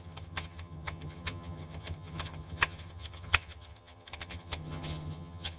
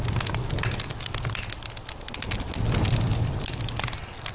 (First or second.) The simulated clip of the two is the first